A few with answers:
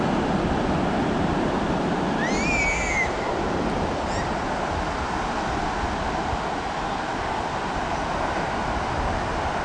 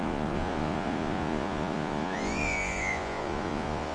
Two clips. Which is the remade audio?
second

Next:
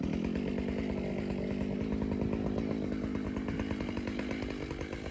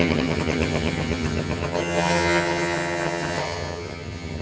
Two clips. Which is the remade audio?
second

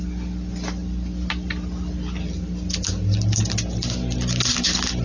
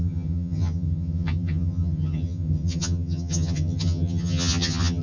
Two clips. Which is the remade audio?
second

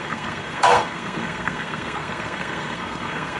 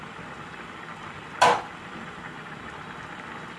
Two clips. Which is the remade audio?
first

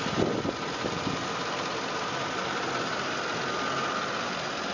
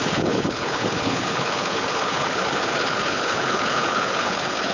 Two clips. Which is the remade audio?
second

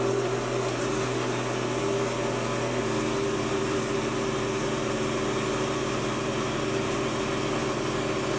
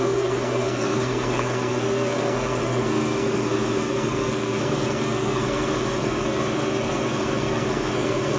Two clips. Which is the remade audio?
second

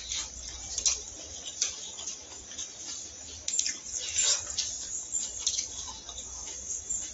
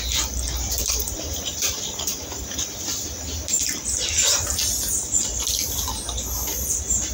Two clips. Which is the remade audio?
second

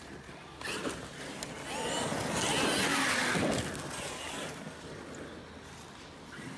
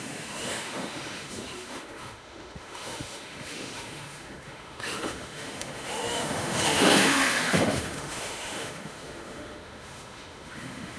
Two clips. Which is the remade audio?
second